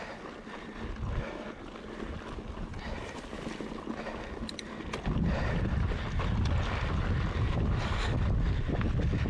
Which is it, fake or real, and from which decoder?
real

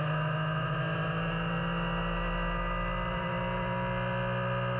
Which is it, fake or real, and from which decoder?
real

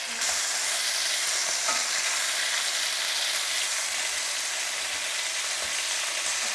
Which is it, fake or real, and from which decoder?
real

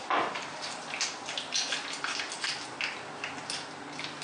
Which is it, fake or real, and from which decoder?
real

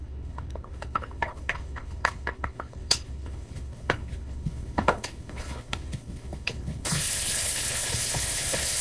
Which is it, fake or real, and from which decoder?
fake, codec, HILCodec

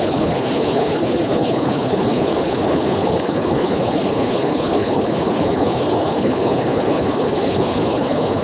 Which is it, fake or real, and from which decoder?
fake, codec, HILCodec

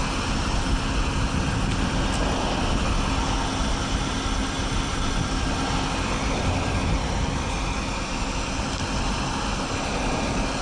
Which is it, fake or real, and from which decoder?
real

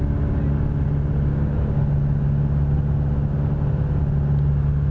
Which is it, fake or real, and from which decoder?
real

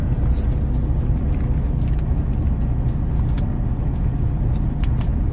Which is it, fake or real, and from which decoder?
real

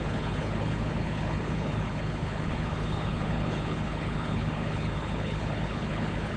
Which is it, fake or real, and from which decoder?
fake, codec, HILCodec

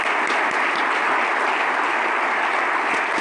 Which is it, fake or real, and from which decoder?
real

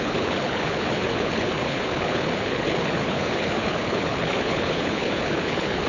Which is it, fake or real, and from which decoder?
fake, codec, HILCodec